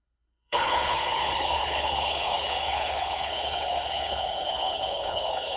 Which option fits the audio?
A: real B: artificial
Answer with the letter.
B